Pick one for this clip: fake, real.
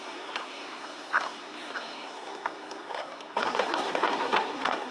fake